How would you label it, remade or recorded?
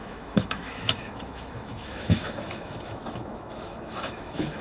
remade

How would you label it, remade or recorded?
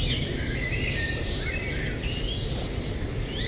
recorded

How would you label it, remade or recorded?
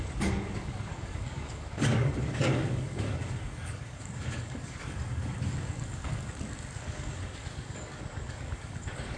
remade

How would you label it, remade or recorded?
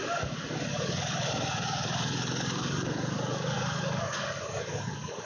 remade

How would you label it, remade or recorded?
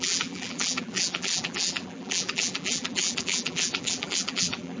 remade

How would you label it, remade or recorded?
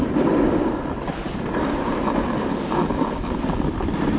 recorded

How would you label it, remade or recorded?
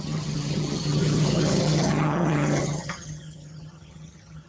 remade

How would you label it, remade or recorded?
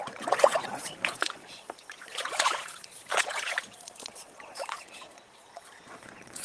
remade